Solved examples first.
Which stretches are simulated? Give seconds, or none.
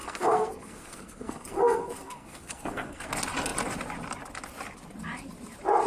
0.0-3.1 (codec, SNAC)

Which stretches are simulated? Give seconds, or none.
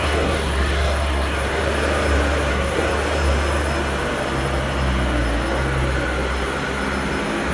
0.0-1.6 (codec, SNAC); 2.5-2.9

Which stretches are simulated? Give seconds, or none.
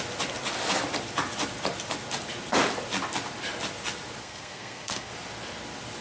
4.2-5.1 (codec, SNAC)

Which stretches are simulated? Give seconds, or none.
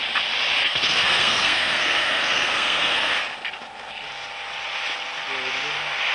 0.6-3.2 (codec, SNAC)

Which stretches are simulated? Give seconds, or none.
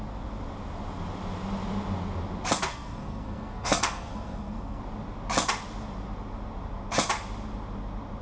2.7-4.8 (codec, SNAC)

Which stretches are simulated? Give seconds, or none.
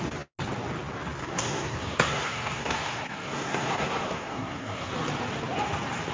1.2-4.9 (codec, SNAC)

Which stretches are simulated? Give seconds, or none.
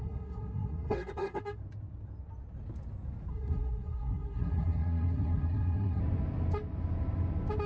0.0-1.4 (codec, SNAC); 3.3-6.0